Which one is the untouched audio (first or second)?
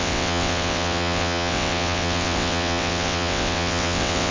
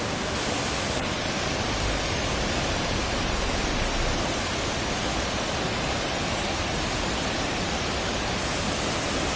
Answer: second